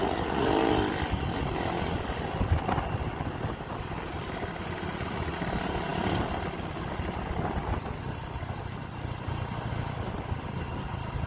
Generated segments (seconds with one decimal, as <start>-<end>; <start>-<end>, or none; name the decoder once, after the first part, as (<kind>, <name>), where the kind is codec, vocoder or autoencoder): 0.0-0.8 (vocoder, Vocos); 4.9-5.4